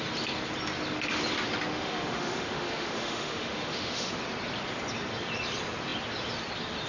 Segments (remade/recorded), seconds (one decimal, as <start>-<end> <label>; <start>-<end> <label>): 0.0-1.7 recorded; 1.7-4.1 remade; 4.1-6.9 recorded

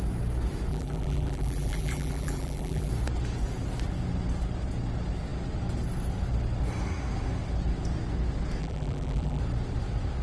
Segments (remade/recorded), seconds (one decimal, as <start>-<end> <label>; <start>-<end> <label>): 0.0-0.7 recorded; 0.7-2.9 remade; 2.9-8.6 recorded; 8.6-9.4 remade; 9.4-10.2 recorded

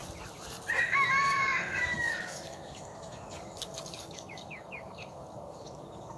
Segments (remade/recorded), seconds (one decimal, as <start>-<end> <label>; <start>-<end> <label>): 0.0-0.8 recorded; 0.8-6.2 remade

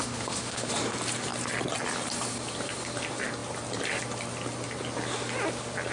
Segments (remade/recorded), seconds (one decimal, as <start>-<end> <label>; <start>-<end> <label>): 0.0-0.7 remade; 0.7-5.9 recorded

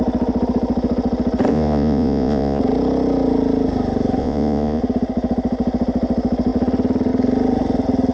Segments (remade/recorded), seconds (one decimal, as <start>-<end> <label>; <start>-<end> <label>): 0.0-1.5 recorded; 1.5-2.6 remade; 2.6-4.2 recorded; 4.2-4.8 remade; 4.8-8.1 recorded

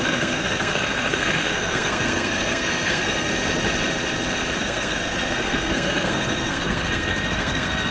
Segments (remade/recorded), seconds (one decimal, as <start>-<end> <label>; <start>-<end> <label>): 0.0-3.3 remade; 3.3-4.6 recorded; 4.6-7.9 remade

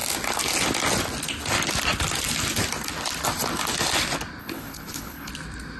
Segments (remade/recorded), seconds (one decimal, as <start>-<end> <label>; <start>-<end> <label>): 0.0-4.4 recorded; 4.4-5.3 remade; 5.3-5.8 recorded

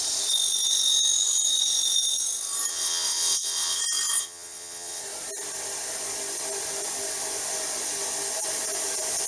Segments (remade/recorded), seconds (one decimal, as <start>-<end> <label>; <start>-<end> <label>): 0.0-2.7 recorded; 2.7-3.8 remade; 3.8-4.2 recorded; 4.2-5.0 remade; 5.0-9.3 recorded